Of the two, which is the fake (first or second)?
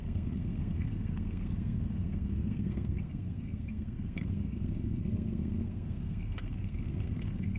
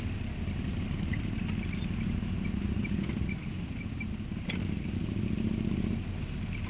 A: first